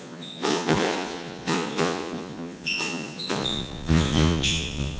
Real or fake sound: fake